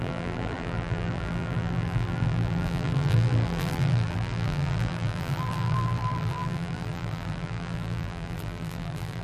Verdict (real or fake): fake